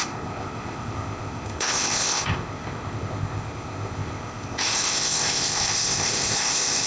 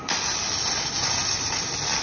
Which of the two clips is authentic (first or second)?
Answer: second